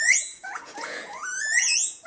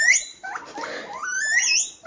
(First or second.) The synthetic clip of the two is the first